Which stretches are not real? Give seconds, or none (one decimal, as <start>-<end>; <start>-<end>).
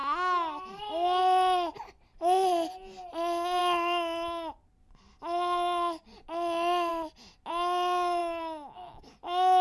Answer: none